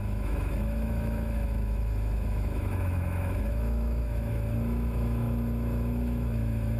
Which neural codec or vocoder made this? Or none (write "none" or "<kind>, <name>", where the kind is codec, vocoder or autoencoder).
autoencoder, DAC-VAE